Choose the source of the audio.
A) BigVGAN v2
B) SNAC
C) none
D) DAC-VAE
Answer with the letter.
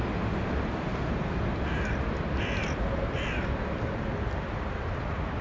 C